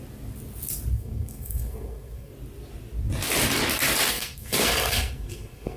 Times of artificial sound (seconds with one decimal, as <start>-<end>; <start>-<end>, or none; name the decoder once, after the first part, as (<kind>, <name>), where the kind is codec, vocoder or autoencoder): 0.9-2.3 (codec, SNAC); 4.1-5.8